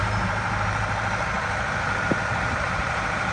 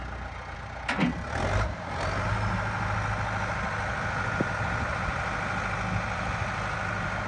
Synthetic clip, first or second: first